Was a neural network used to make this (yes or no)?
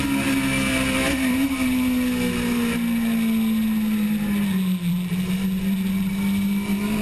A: no